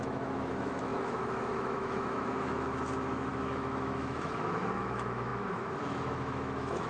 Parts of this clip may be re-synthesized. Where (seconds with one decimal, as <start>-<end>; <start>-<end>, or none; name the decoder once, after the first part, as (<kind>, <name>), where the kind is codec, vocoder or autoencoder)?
0.0-6.9 (autoencoder, DAC-VAE)